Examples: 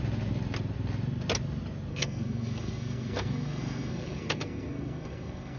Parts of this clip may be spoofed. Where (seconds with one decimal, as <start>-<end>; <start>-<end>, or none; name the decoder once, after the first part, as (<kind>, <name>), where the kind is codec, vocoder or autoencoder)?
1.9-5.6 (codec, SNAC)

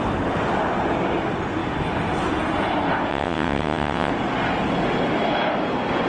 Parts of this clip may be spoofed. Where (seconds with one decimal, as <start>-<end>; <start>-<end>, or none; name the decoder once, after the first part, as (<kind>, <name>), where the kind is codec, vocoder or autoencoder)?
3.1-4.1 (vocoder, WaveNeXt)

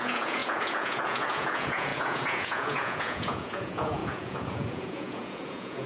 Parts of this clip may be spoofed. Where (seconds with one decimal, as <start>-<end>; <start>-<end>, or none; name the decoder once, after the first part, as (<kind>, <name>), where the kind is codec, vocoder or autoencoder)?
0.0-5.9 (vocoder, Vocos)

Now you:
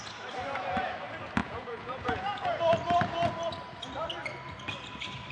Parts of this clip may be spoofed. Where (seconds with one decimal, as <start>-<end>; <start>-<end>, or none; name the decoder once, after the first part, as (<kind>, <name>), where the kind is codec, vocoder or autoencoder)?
1.4-2.6 (vocoder, Vocos)